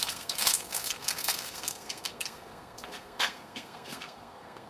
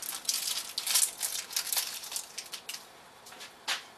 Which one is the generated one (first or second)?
first